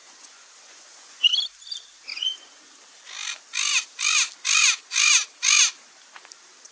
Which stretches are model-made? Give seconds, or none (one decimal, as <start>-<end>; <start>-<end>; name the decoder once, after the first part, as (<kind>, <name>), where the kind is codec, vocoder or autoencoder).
0.0-1.3 (vocoder, Vocos); 2.1-2.6